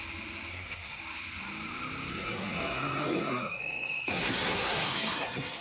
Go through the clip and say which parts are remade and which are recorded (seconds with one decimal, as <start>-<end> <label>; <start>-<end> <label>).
0.0-0.5 recorded; 0.5-1.0 remade; 1.0-2.1 recorded; 2.1-5.6 remade